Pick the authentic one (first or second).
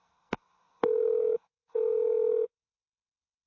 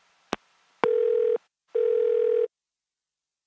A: second